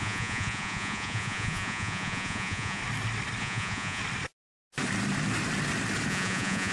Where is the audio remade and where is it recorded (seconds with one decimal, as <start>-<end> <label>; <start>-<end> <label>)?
0.0-2.8 remade; 2.8-3.4 recorded; 3.4-4.0 remade; 4.0-6.1 recorded; 6.1-6.7 remade